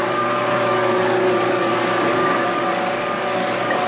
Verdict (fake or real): fake